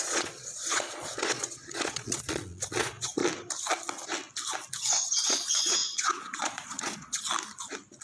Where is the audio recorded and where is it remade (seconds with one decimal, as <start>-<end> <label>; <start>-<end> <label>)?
0.0-3.2 remade; 3.2-5.2 recorded; 5.2-7.1 remade; 7.1-8.0 recorded